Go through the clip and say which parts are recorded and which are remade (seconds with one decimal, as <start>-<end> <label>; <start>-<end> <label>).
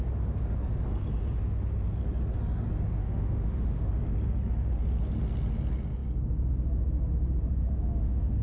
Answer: 0.0-3.0 recorded; 3.0-3.9 remade; 3.9-8.4 recorded